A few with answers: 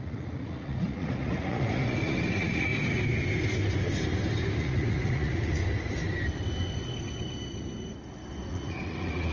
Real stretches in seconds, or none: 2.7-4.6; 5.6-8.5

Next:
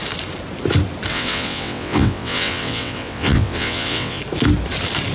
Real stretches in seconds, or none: 0.0-1.1; 4.2-5.1

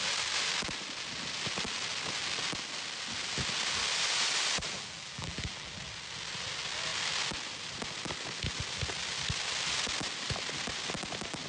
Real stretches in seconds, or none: 0.0-4.7; 5.7-11.5